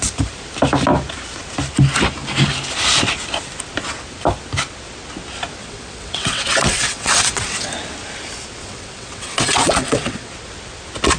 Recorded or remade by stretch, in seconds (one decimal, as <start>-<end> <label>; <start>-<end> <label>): 0.0-5.6 recorded; 5.6-7.7 remade; 7.7-8.6 recorded; 8.6-10.3 remade; 10.3-11.2 recorded

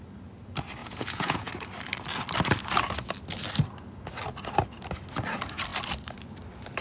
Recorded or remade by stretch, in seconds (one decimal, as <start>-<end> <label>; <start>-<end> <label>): 0.0-0.8 recorded; 0.8-1.5 remade; 1.5-6.8 recorded

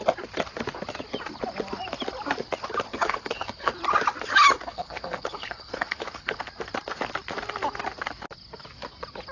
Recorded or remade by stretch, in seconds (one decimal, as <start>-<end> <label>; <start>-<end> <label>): 0.0-2.9 recorded; 2.9-3.7 remade; 3.7-4.7 recorded; 4.7-6.4 remade; 6.4-9.3 recorded

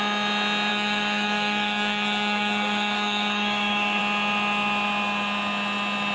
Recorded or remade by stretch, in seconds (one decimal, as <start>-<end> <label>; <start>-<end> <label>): 0.0-0.7 recorded; 0.7-4.0 remade; 4.0-6.1 recorded

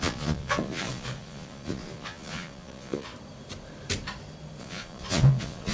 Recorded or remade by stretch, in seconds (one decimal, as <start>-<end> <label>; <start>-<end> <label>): 0.0-3.1 remade; 3.1-4.6 recorded; 4.6-5.7 remade